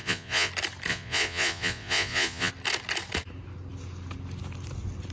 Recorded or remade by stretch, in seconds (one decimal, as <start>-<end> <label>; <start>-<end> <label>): 0.0-0.5 remade; 0.5-0.9 recorded; 0.9-2.5 remade; 2.5-5.1 recorded